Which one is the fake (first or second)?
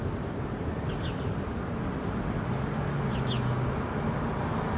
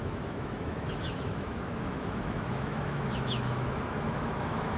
second